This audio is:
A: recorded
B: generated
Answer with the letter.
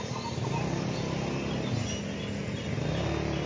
A